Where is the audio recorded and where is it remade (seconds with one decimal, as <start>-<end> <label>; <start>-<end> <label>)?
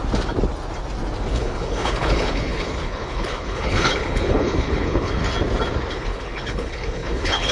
0.0-1.3 recorded; 1.3-5.2 remade; 5.2-5.9 recorded; 5.9-7.5 remade